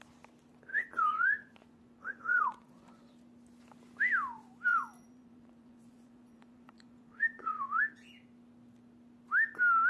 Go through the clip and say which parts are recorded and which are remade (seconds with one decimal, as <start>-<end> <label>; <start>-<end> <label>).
0.0-0.7 recorded; 0.7-3.1 remade; 3.1-4.7 recorded; 4.7-7.8 remade; 7.8-9.9 recorded